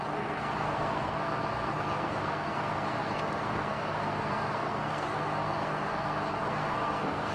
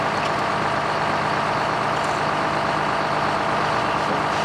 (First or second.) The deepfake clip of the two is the first